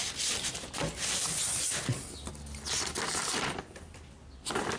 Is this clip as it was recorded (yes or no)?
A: yes